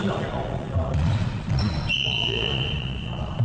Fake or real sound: fake